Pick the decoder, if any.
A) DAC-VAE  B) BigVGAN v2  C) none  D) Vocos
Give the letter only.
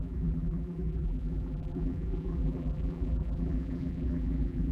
B